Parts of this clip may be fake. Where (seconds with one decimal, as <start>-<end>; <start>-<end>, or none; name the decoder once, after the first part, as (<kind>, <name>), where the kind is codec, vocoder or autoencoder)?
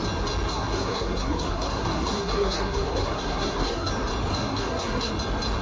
0.5-3.9 (codec, SNAC); 4.3-5.1